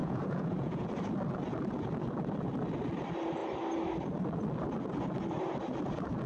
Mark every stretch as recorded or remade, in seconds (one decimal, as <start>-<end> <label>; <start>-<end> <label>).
0.0-0.9 remade; 0.9-6.3 recorded